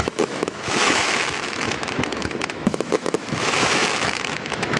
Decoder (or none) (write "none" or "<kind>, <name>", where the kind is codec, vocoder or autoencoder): autoencoder, DAC-VAE